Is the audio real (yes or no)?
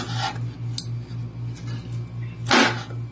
yes